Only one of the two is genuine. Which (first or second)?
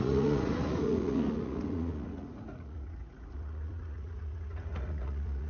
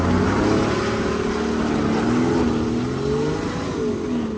second